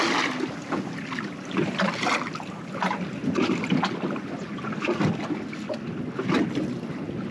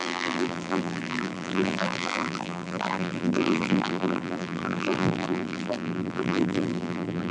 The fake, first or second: second